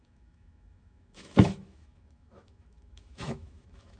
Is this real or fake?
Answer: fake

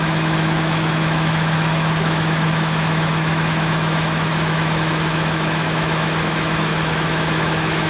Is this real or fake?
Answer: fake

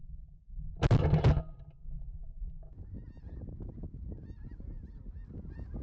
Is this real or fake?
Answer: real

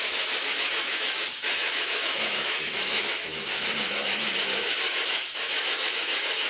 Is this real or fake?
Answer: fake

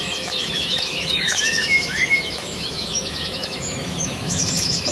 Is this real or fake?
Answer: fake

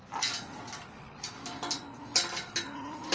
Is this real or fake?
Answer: real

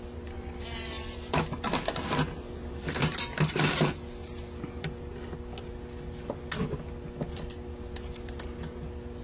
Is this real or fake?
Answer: real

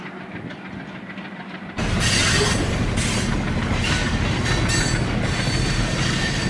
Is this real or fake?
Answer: real